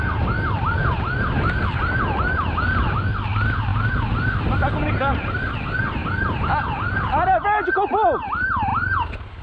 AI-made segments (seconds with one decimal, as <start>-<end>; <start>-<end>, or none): none